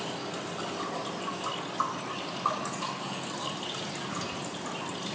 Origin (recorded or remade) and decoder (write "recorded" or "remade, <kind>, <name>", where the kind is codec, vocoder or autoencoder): recorded